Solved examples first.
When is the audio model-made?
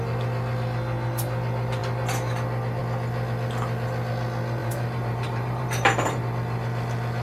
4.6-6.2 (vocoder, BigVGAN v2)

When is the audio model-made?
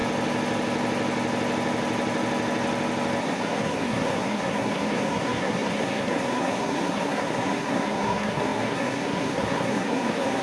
3.2-10.4 (codec, SNAC)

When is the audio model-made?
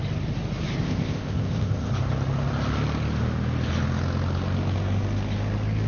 0.8-1.9 (codec, ZipCodec)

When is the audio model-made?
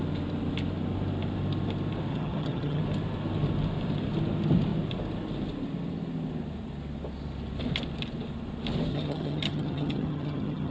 2.1-2.8 (vocoder, HiFi-GAN); 8.9-10.7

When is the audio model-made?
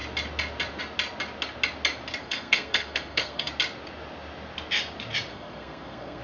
2.2-3.5 (codec, SNAC); 5.3-6.2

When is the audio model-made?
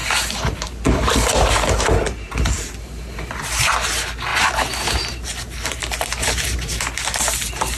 4.3-5.8 (vocoder, BigVGAN v2); 6.2-6.8